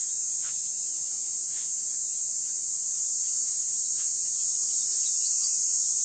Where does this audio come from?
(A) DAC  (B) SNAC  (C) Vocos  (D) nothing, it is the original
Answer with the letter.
C